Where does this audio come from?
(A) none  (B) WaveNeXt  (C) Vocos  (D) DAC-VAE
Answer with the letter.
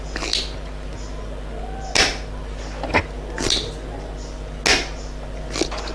A